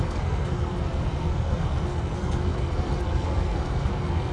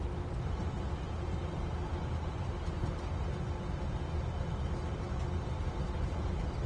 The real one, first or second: second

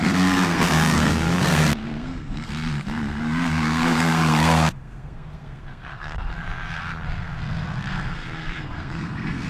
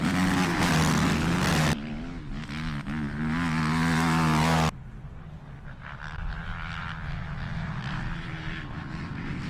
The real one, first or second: second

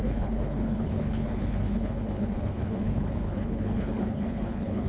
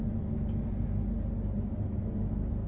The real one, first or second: second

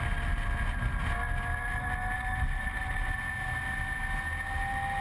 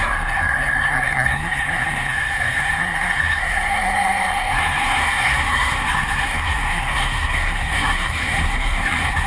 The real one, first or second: first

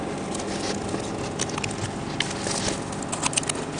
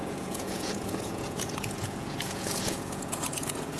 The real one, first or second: first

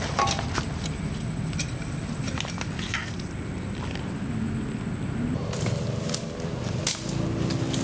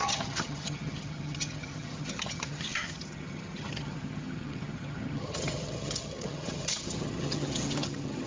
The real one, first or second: first